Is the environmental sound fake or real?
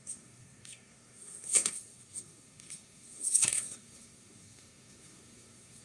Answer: fake